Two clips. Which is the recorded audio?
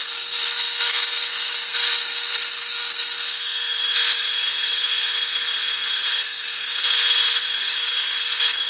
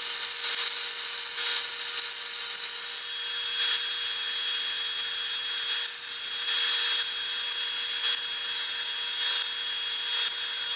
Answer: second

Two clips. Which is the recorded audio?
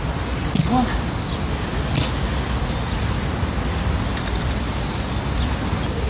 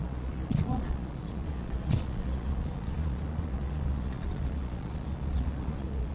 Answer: first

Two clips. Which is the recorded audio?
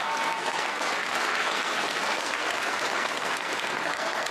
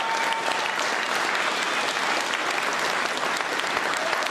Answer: second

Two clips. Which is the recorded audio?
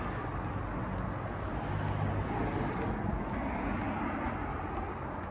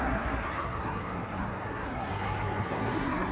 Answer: first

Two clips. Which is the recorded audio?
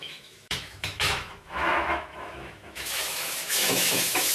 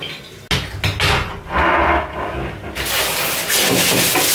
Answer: second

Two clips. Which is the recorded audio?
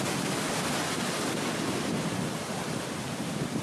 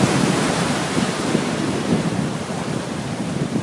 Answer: first